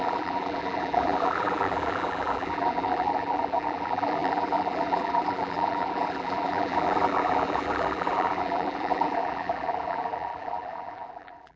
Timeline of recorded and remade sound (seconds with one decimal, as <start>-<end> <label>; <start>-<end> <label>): 0.0-11.6 remade